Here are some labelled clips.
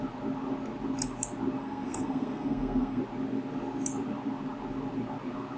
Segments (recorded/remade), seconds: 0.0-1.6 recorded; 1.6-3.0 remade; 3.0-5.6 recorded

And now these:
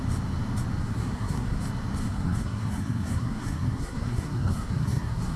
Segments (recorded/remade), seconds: 0.0-0.8 recorded; 0.8-1.6 remade; 1.6-2.0 recorded; 2.0-5.4 remade

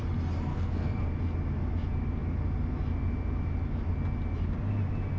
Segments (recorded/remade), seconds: 0.0-0.5 recorded; 0.5-1.1 remade; 1.1-5.2 recorded

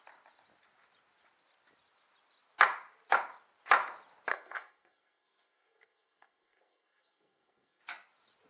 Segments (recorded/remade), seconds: 0.0-4.3 recorded; 4.3-7.8 remade; 7.8-8.5 recorded

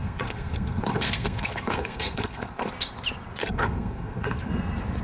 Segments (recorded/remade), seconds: 0.0-2.7 remade; 2.7-3.4 recorded; 3.4-4.5 remade; 4.5-5.0 recorded

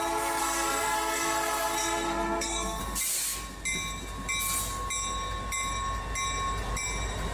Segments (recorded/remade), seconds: 0.0-0.4 recorded; 0.4-2.8 remade; 2.8-7.3 recorded

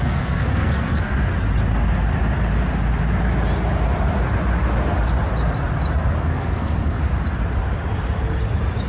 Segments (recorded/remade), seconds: 0.0-1.3 remade; 1.3-6.2 recorded; 6.2-7.0 remade; 7.0-8.9 recorded